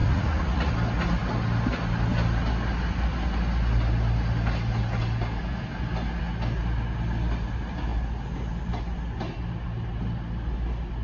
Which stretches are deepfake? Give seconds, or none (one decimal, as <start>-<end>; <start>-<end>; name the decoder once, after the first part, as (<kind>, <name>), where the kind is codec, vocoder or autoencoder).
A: 0.0-0.7 (vocoder, Vocos)